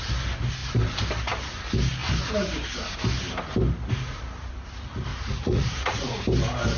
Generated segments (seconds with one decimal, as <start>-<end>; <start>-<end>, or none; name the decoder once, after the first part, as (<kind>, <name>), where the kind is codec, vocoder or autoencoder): 5.1-6.2 (vocoder, Vocos)